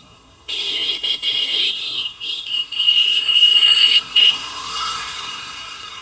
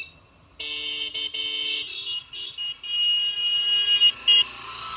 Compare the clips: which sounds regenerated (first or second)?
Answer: first